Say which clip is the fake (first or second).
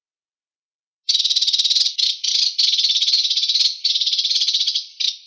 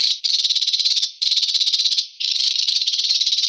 second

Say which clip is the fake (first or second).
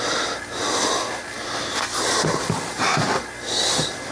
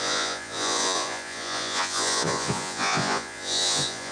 second